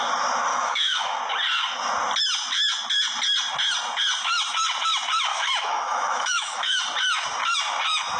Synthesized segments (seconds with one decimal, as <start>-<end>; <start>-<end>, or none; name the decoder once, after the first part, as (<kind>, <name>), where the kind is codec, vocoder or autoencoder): 0.5-1.2 (autoencoder, DAC-VAE); 5.3-6.8